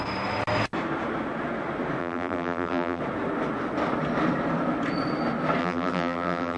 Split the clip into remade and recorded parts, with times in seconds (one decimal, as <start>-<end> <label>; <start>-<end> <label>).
0.0-2.0 recorded; 2.0-3.0 remade; 3.0-5.6 recorded; 5.6-6.6 remade